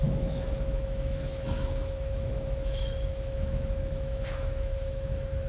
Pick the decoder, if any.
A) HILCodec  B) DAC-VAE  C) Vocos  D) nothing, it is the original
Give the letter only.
B